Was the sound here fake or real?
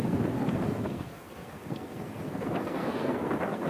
fake